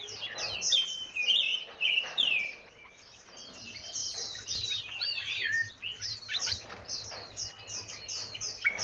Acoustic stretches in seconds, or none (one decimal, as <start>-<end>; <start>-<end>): 0.0-1.5; 2.7-3.1; 3.6-8.8